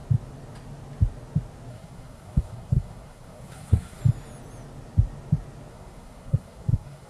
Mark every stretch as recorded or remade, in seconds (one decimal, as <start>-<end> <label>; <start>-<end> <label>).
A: 0.0-1.7 recorded; 1.7-4.0 remade; 4.0-5.7 recorded; 5.7-7.1 remade